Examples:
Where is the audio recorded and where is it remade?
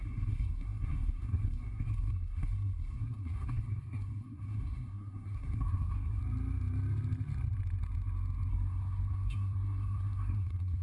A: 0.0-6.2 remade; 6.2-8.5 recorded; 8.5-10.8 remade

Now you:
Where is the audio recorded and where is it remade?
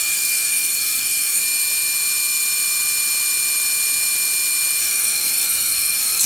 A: 0.0-1.4 remade; 1.4-4.8 recorded; 4.8-6.3 remade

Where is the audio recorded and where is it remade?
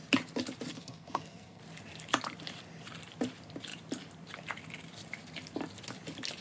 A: 0.0-0.7 recorded; 0.7-1.6 remade; 1.6-6.4 recorded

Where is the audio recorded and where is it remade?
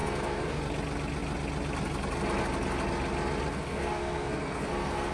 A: 0.0-0.6 remade; 0.6-3.7 recorded; 3.7-5.1 remade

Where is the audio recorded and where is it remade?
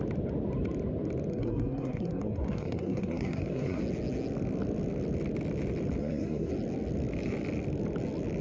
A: 0.0-1.3 recorded; 1.3-3.8 remade; 3.8-6.0 recorded; 6.0-6.5 remade; 6.5-8.4 recorded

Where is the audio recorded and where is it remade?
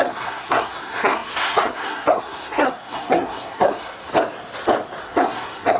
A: 0.0-4.1 remade; 4.1-5.0 recorded; 5.0-5.8 remade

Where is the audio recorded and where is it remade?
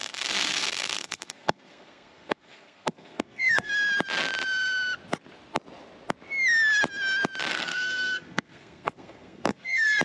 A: 0.0-3.7 remade; 3.7-7.5 recorded; 7.5-10.0 remade